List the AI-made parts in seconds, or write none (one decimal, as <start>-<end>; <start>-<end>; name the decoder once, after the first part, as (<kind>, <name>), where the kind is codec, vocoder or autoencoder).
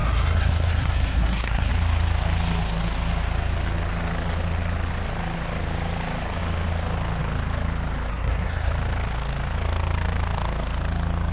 0.0-1.7 (codec, SNAC); 8.1-8.7